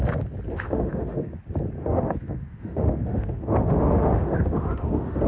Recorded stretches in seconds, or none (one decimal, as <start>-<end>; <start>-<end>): 0.0-0.5; 1.4-1.8